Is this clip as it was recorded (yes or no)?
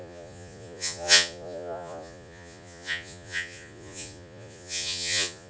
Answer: no